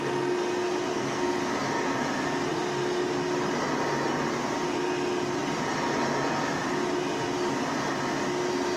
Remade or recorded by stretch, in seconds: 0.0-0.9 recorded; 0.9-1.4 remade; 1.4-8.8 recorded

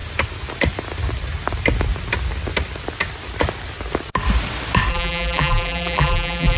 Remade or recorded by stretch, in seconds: 0.0-4.9 recorded; 4.9-6.6 remade

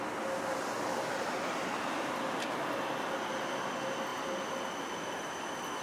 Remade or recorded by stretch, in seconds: 0.0-1.1 recorded; 1.1-2.9 remade; 2.9-5.8 recorded

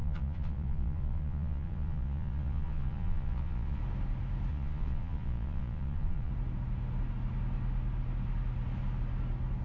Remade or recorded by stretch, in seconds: 0.0-3.8 remade; 3.8-4.5 recorded; 4.5-6.3 remade; 6.3-9.6 recorded

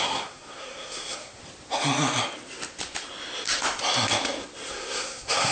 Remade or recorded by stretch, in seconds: 0.0-1.4 remade; 1.4-4.7 recorded; 4.7-5.5 remade

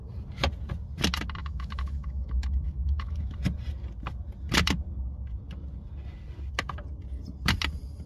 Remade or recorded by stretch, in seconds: 0.0-1.4 recorded; 1.4-3.4 remade; 3.4-8.1 recorded

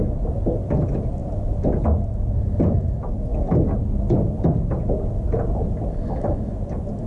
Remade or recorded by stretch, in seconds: 0.0-7.1 recorded